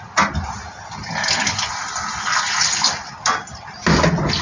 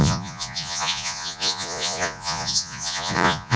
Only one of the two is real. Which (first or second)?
first